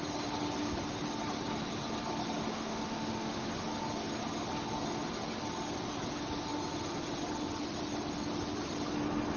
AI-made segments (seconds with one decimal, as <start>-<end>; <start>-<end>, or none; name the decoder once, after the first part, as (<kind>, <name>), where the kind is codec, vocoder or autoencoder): 2.5-3.5 (autoencoder, DAC-VAE)